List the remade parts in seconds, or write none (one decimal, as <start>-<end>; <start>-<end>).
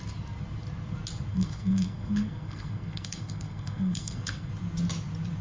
1.3-4.5